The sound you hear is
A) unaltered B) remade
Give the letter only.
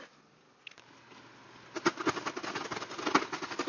A